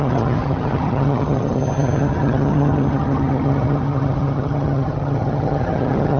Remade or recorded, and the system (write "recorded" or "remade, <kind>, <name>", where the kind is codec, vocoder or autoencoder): remade, vocoder, HiFi-GAN